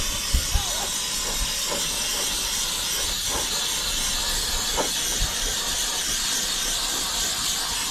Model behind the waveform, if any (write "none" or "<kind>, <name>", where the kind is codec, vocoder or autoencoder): none